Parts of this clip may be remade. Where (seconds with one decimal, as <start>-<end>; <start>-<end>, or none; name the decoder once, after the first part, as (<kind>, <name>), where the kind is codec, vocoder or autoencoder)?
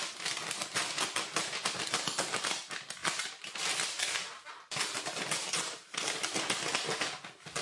none